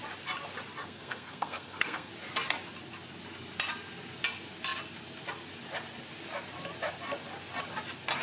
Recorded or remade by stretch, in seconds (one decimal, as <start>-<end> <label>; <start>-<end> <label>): 0.0-0.8 recorded; 0.8-2.1 remade; 2.1-8.2 recorded